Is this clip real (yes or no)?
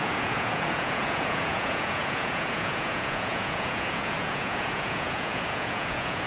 no